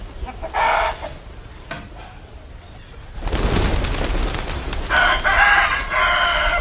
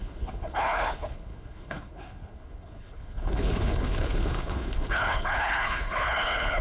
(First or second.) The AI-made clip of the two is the second